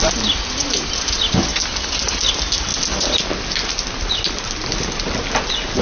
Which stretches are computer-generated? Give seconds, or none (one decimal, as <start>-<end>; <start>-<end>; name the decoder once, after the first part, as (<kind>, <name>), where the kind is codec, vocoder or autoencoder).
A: none

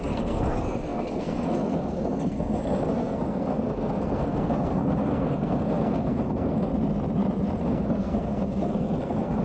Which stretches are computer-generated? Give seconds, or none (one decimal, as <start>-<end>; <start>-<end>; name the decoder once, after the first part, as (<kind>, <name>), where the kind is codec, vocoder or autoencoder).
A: 0.0-6.7 (codec, SNAC); 7.6-9.4